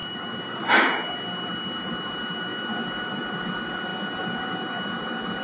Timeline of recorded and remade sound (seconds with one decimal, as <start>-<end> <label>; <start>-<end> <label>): 0.0-0.6 remade; 0.6-5.4 recorded